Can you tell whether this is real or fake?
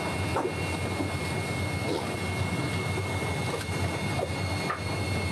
real